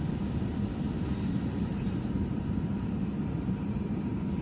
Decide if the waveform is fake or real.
fake